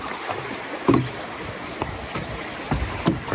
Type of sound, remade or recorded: recorded